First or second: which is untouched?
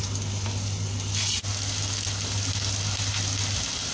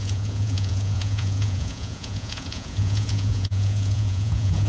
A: first